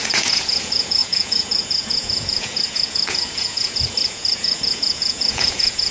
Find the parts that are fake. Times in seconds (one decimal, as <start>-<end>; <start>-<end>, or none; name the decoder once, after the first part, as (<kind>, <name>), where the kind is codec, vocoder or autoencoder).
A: 0.0-5.9 (vocoder, Vocos)